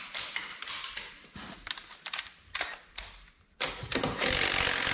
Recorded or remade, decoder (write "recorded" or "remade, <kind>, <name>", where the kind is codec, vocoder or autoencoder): recorded